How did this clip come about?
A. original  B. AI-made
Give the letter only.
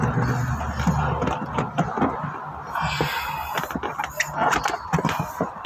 A